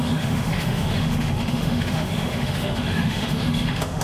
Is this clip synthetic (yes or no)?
yes